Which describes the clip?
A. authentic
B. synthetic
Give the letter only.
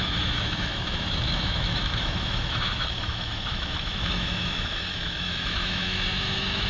B